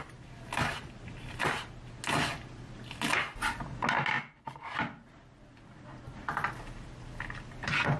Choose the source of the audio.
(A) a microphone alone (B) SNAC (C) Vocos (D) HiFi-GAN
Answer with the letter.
A